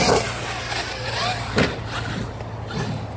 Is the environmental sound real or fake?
real